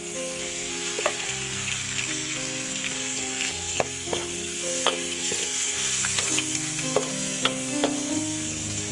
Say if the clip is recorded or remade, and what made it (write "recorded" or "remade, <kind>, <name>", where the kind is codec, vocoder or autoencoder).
remade, codec, SNAC